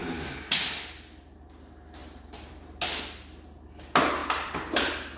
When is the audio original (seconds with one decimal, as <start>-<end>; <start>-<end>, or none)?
0.5-2.0; 2.8-4.2